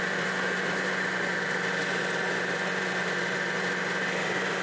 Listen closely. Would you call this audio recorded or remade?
remade